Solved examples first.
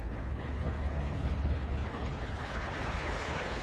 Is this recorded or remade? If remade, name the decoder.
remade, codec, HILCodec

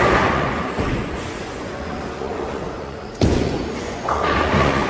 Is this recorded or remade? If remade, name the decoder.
remade, vocoder, Vocos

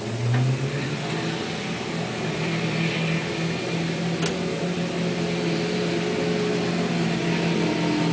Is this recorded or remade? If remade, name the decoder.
recorded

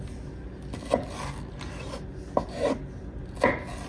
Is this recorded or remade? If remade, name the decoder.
recorded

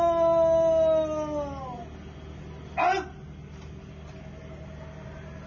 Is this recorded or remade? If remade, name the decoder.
recorded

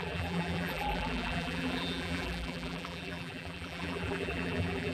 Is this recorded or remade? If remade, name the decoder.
remade, vocoder, BigVGAN v2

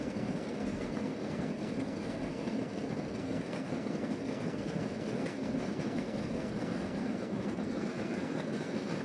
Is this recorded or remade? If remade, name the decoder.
remade, codec, SNAC